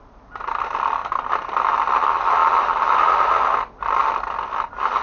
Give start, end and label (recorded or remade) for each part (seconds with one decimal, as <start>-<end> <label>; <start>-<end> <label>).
0.0-1.0 recorded; 1.0-1.7 remade; 1.7-2.4 recorded; 2.4-3.0 remade; 3.0-5.0 recorded